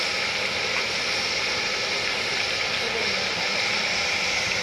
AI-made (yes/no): no